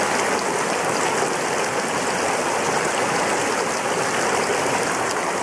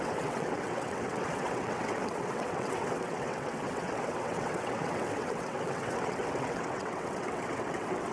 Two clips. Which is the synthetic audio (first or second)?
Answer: second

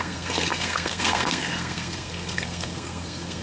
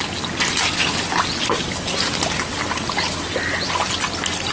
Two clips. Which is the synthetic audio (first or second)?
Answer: first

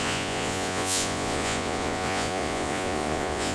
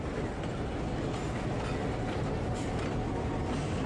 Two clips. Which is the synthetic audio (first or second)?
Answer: first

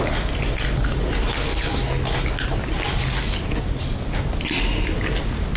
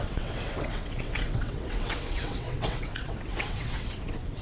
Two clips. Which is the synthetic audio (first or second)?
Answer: second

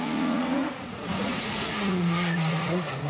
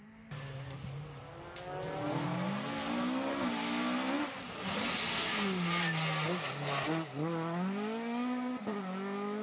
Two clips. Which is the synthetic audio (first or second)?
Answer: first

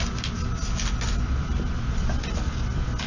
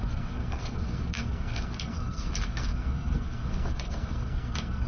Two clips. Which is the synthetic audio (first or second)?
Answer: second